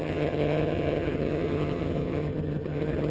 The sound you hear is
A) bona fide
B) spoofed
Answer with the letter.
B